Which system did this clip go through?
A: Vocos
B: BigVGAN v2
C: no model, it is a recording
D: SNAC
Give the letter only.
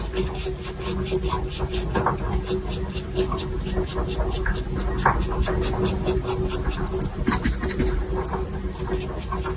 C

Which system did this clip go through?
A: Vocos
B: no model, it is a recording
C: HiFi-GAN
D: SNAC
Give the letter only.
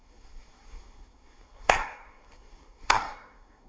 D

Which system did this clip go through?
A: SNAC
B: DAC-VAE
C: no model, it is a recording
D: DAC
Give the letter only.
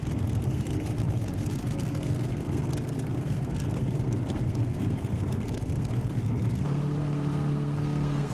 A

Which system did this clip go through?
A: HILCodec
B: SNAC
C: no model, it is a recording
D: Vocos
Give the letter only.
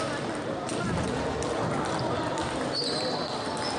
C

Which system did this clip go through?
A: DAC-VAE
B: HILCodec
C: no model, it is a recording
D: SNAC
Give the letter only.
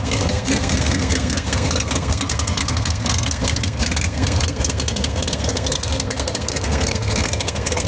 D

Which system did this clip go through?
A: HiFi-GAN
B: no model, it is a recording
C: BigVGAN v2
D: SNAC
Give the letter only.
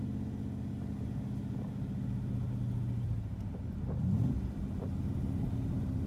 B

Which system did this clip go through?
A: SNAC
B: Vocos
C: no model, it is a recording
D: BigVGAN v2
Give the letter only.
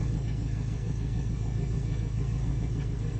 A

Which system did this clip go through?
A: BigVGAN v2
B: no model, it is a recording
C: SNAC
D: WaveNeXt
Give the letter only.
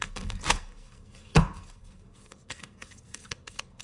C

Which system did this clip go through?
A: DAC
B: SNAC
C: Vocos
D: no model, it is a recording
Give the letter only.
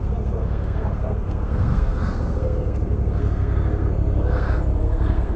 B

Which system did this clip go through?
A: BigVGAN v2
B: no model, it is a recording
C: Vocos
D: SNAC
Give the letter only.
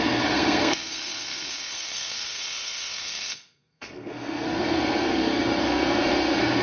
D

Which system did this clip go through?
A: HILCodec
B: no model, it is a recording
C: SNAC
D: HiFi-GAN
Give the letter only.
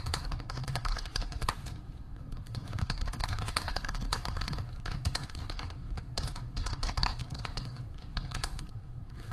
C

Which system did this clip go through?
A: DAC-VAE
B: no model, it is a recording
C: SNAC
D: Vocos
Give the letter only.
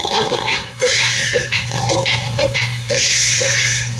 C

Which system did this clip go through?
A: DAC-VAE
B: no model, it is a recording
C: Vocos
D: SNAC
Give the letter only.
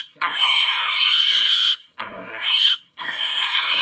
D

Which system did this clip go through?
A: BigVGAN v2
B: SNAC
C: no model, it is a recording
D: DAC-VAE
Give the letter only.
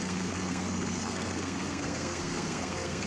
B